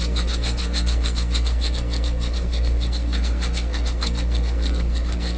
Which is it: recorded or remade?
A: remade